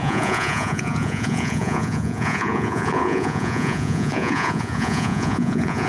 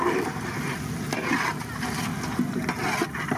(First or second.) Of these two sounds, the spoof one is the first